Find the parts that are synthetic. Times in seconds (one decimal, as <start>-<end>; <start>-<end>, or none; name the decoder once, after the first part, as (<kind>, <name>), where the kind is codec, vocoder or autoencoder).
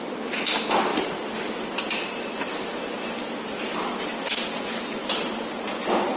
none